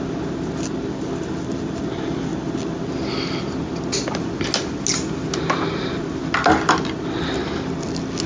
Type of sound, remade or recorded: recorded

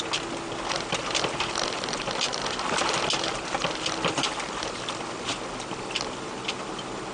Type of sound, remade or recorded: recorded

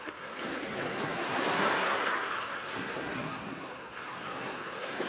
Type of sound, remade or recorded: remade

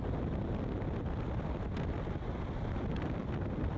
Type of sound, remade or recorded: recorded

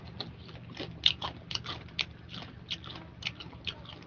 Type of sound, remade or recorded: recorded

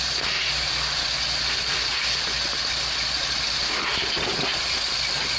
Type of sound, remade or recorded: recorded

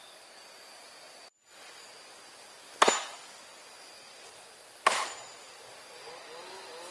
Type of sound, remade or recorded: recorded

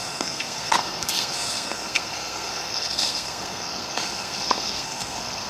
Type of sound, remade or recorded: remade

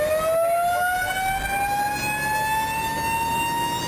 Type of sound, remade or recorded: recorded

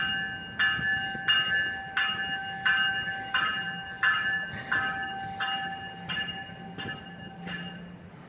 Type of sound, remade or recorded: recorded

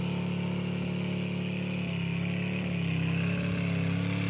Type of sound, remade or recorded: recorded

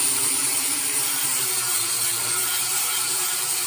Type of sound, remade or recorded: remade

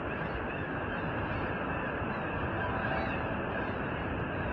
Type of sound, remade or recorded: recorded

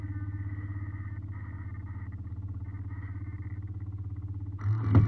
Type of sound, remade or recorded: recorded